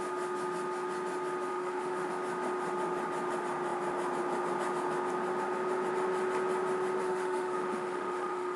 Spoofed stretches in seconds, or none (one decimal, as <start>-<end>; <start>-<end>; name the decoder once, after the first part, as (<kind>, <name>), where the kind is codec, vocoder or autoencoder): 1.5-2.1 (autoencoder, DAC-VAE); 7.0-8.6